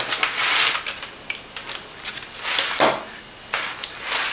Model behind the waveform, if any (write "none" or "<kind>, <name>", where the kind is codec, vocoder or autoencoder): none